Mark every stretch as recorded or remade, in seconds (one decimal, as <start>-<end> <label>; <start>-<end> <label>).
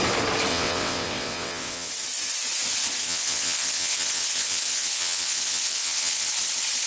0.0-0.5 recorded; 0.5-1.9 remade; 1.9-3.0 recorded; 3.0-6.3 remade; 6.3-6.9 recorded